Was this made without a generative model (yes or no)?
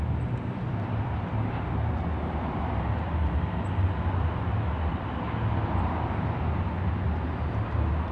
yes